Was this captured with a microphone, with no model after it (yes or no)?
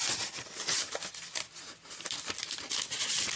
yes